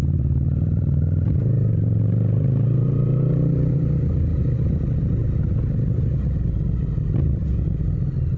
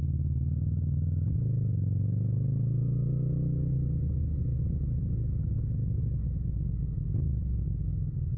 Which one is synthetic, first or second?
first